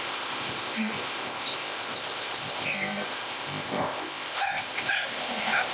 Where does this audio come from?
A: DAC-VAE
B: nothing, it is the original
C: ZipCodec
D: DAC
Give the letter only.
C